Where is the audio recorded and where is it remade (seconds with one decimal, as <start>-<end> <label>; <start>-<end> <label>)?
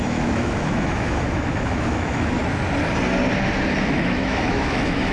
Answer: 0.0-2.4 remade; 2.4-3.8 recorded; 3.8-5.1 remade